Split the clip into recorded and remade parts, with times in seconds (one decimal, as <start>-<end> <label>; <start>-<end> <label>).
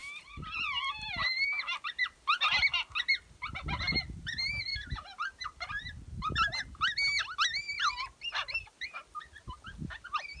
0.0-10.4 recorded